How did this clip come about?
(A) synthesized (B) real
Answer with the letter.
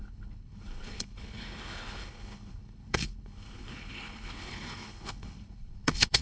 A